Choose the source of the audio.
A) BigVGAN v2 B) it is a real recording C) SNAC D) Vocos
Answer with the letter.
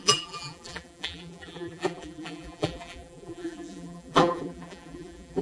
A